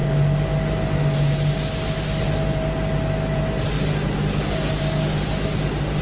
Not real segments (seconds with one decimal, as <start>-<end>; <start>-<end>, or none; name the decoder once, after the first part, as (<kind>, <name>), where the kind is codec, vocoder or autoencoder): none